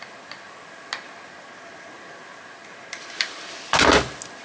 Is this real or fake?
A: real